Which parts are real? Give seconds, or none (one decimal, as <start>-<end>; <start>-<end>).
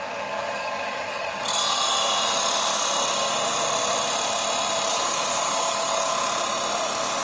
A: 1.5-4.9; 6.1-7.2